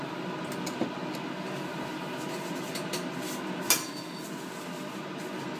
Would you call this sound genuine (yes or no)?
yes